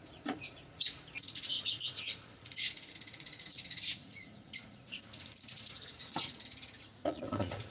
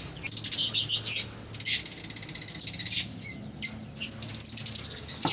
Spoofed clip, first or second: first